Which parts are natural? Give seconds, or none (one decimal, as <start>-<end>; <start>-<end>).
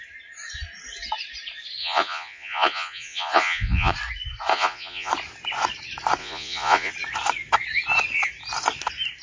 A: 0.0-1.8; 3.9-4.5; 5.1-6.2; 6.9-9.2